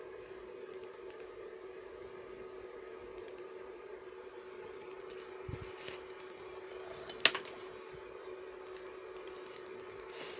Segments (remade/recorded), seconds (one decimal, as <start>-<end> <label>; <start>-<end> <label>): 0.0-3.0 recorded; 3.0-5.0 remade; 5.0-10.4 recorded